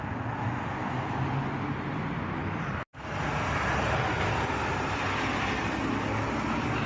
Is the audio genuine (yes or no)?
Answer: yes